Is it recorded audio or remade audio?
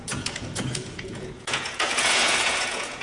remade